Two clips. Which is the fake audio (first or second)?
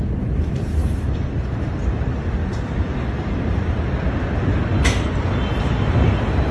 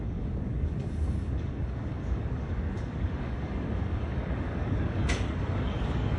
second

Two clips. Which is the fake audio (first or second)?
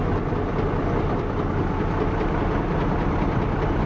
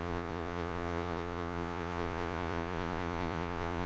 second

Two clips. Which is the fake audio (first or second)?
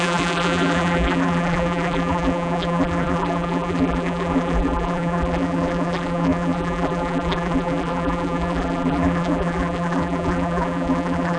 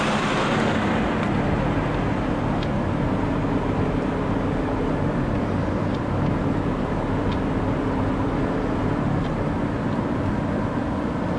first